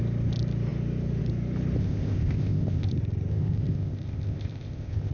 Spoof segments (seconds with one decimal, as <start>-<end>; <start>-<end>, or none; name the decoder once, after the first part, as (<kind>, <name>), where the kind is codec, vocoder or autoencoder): 1.8-2.9 (codec, ZipCodec); 3.3-5.1